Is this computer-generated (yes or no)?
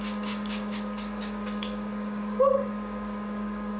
yes